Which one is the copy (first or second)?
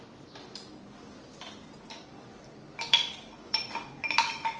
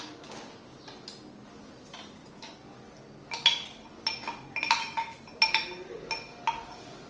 first